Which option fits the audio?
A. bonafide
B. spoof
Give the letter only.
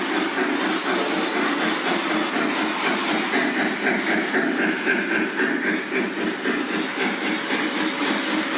A